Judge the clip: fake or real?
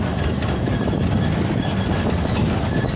real